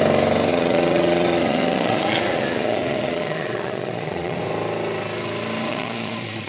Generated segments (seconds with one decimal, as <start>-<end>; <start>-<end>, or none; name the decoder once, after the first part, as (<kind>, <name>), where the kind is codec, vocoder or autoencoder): 0.5-4.4 (vocoder, Vocos); 5.7-6.5